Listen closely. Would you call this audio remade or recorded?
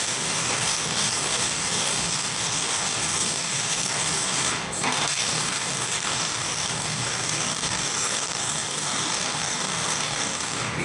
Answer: remade